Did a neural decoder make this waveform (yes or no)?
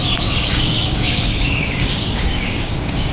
yes